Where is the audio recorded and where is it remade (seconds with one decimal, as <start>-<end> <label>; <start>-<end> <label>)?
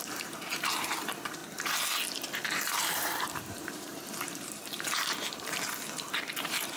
0.0-1.4 remade; 1.4-2.5 recorded; 2.5-6.8 remade